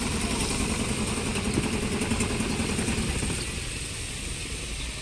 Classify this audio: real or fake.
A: real